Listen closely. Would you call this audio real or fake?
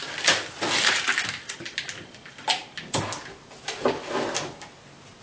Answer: real